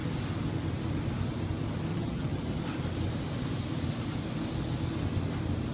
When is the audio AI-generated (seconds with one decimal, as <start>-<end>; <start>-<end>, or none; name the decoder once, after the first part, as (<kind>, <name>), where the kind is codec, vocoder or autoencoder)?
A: 1.9-2.4 (vocoder, HiFi-GAN)